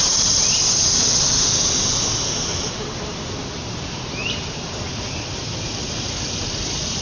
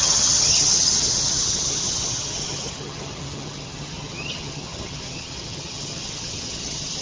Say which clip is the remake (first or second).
second